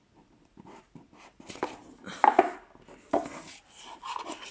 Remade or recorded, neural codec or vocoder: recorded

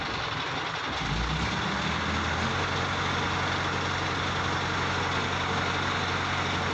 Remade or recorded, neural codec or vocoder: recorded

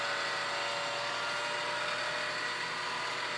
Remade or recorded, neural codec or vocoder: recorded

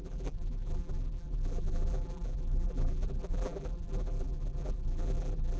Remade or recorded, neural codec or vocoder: remade, vocoder, BigVGAN v2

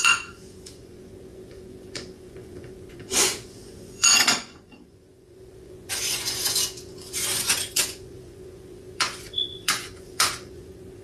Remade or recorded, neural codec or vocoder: remade, vocoder, Vocos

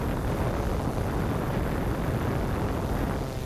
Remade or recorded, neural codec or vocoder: recorded